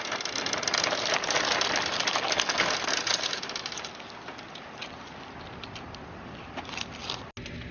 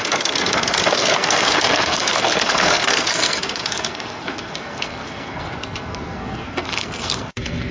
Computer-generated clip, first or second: second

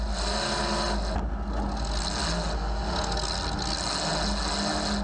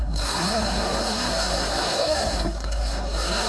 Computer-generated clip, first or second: second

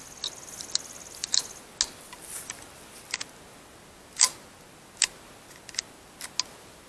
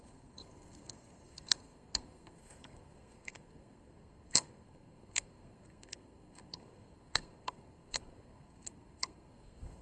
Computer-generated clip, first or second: second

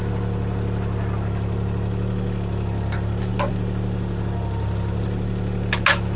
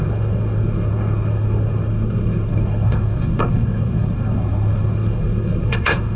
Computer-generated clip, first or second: second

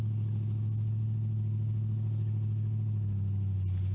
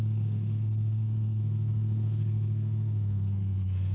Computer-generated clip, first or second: second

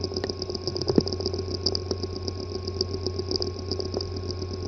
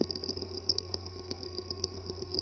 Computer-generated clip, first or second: second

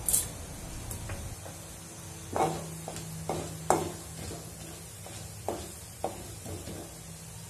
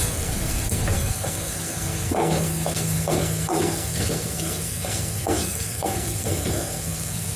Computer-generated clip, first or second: second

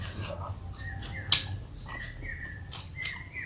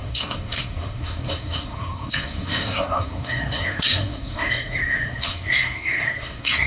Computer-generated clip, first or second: second